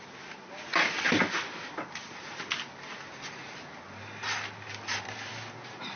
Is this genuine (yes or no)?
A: yes